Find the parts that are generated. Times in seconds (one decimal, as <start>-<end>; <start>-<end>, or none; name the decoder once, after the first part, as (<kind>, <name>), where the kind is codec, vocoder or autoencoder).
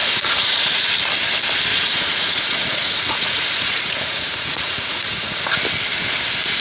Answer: 0.0-0.7 (vocoder, Vocos); 1.7-5.4